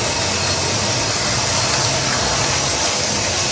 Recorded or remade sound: recorded